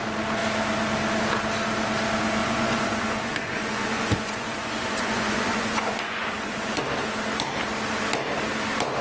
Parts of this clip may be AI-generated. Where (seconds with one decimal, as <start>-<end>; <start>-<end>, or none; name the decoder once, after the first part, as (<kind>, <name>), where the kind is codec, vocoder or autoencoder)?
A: 2.4-6.8 (vocoder, Vocos)